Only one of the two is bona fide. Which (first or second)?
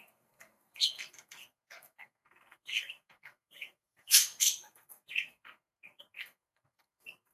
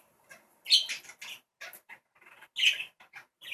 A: second